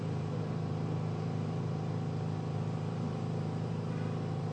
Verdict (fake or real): fake